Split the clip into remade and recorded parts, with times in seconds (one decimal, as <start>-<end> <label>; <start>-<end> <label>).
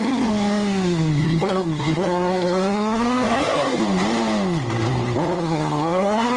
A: 0.0-3.8 remade; 3.8-5.4 recorded; 5.4-6.4 remade